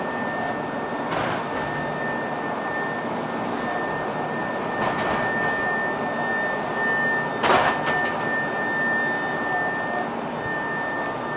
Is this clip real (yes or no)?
yes